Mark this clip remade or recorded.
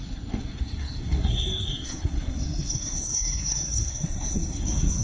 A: remade